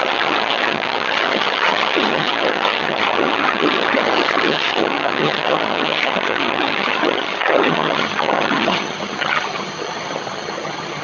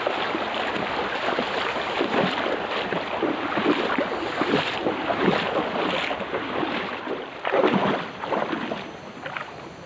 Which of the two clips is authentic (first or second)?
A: second